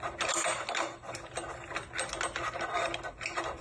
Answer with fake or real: real